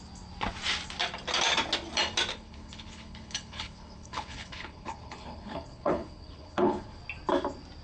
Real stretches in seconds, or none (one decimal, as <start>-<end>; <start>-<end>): 0.0-2.3; 7.0-7.8